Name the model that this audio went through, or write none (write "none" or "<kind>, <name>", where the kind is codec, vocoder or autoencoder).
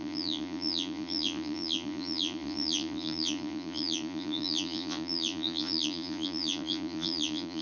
vocoder, Vocos